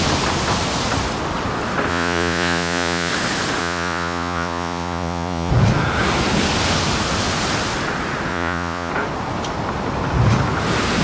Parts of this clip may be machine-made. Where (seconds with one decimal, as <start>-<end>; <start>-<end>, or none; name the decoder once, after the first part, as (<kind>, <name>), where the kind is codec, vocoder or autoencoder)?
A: 1.9-3.1 (vocoder, Vocos); 3.6-5.5; 8.3-8.9